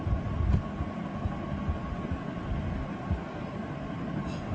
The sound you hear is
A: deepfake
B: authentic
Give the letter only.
B